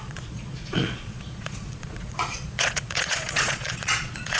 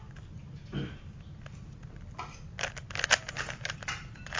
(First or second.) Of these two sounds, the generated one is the first